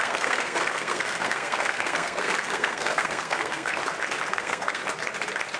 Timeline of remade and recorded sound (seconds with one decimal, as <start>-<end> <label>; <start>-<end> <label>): 0.0-3.8 remade; 3.8-4.3 recorded; 4.3-4.8 remade; 4.8-5.6 recorded